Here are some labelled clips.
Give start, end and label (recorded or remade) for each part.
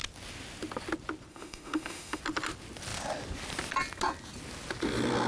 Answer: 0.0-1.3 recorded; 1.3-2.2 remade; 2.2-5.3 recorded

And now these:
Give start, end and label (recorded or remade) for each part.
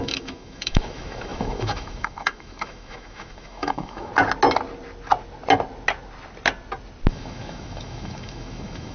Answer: 0.0-4.1 remade; 4.1-7.1 recorded; 7.1-8.9 remade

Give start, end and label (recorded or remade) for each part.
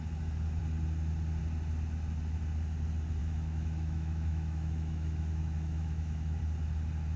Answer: 0.0-3.2 recorded; 3.2-6.4 remade; 6.4-7.2 recorded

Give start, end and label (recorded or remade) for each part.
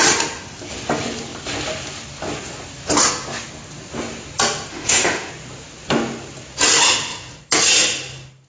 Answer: 0.0-4.7 recorded; 4.7-5.3 remade; 5.3-8.5 recorded